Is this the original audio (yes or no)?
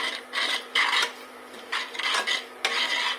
yes